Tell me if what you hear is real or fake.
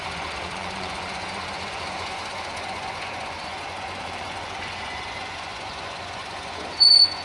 fake